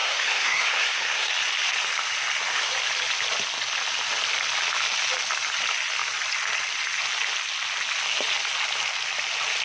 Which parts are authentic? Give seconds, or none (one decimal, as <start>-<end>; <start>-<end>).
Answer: 1.3-9.6